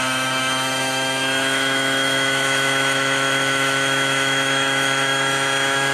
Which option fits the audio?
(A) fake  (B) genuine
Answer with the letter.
A